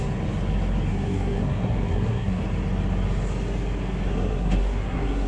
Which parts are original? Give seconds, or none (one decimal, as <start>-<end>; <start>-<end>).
0.0-0.9; 2.4-4.1